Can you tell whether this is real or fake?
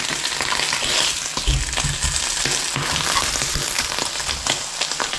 real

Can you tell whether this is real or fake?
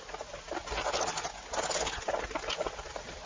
real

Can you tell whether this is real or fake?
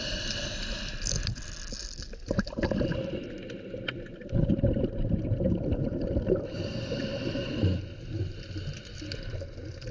real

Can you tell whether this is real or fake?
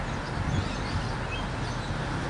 real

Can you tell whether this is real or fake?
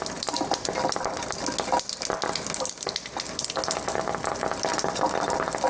real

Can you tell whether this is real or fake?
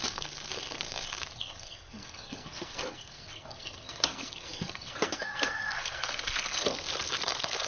fake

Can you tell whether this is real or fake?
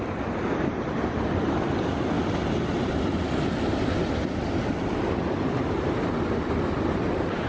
real